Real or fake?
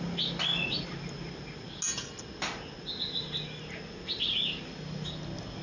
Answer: real